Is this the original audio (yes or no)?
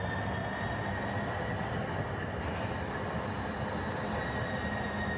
yes